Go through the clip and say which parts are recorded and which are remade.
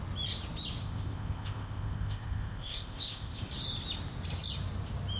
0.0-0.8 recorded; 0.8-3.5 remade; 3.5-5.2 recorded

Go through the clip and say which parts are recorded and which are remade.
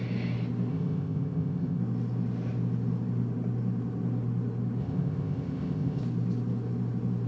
0.0-0.7 recorded; 0.7-1.8 remade; 1.8-4.8 recorded; 4.8-6.0 remade; 6.0-7.3 recorded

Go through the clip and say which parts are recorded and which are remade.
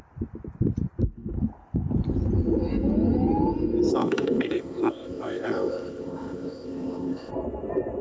0.0-3.9 recorded; 3.9-7.3 remade; 7.3-8.0 recorded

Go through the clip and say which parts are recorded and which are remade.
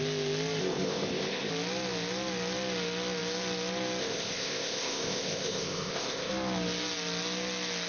0.0-0.6 recorded; 0.6-1.5 remade; 1.5-4.0 recorded; 4.0-6.3 remade; 6.3-7.9 recorded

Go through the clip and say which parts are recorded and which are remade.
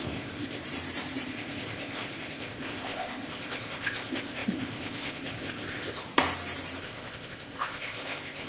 0.0-0.6 remade; 0.6-1.3 recorded; 1.3-6.0 remade; 6.0-6.8 recorded; 6.8-8.5 remade